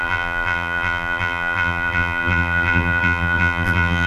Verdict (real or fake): fake